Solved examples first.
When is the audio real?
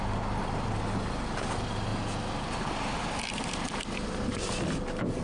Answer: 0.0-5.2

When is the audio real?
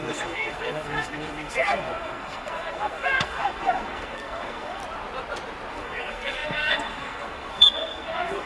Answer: 4.8-5.7